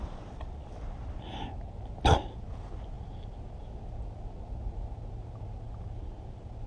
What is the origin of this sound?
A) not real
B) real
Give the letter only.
B